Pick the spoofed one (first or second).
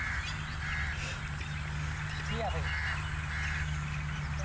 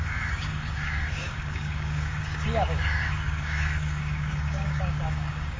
second